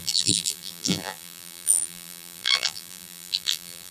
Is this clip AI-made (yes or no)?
yes